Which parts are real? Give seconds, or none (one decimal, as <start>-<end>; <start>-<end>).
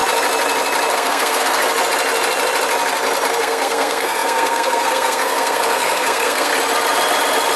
0.0-0.9; 1.6-3.4; 6.5-7.6